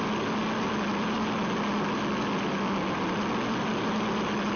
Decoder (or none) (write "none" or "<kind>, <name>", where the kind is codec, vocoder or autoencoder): none